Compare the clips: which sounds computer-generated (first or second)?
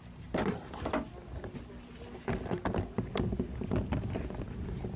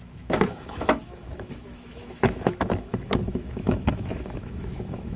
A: second